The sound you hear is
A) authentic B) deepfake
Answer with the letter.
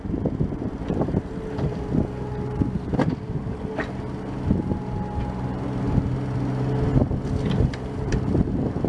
A